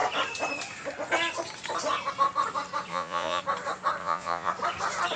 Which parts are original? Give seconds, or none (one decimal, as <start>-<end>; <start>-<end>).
0.0-2.9; 3.4-4.0; 4.5-5.2